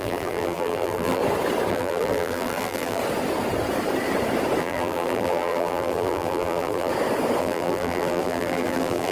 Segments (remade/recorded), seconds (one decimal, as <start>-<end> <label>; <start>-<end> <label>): 0.0-1.2 remade; 1.2-1.7 recorded; 1.7-3.0 remade; 3.0-4.6 recorded; 4.6-6.9 remade; 6.9-7.4 recorded; 7.4-9.1 remade

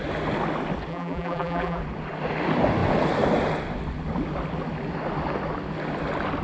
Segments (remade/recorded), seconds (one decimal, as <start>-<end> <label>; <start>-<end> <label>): 0.0-0.9 recorded; 0.9-1.8 remade; 1.8-6.4 recorded

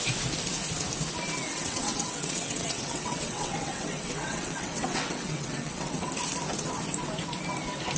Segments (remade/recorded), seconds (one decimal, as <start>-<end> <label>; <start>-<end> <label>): 0.0-1.4 recorded; 1.4-6.1 remade; 6.1-8.0 recorded

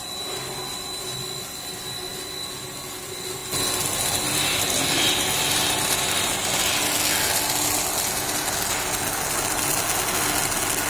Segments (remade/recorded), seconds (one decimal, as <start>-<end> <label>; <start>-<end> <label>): 0.0-10.9 recorded

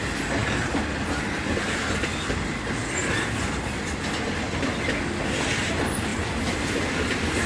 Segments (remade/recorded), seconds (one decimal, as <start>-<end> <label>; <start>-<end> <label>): 0.0-7.5 recorded

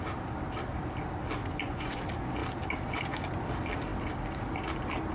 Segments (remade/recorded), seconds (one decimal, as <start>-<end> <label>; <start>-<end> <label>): 0.0-1.4 recorded; 1.4-2.0 remade; 2.0-5.1 recorded

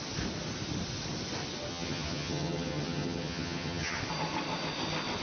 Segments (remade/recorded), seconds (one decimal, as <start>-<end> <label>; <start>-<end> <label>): 0.0-1.7 recorded; 1.7-4.0 remade; 4.0-5.2 recorded

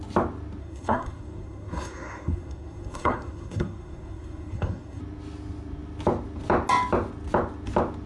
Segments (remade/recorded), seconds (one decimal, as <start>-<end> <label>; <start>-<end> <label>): 0.0-0.6 recorded; 0.6-5.0 remade; 5.0-8.1 recorded